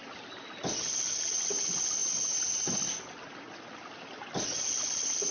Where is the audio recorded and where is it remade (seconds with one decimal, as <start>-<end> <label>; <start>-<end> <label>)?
0.0-5.3 recorded